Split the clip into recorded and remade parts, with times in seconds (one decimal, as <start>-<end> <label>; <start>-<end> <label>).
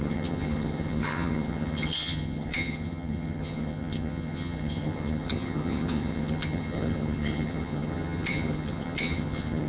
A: 0.0-9.7 remade